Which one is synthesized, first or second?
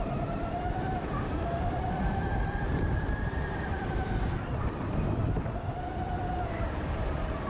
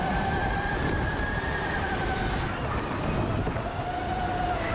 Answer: first